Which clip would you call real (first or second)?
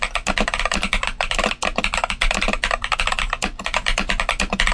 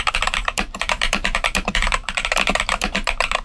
first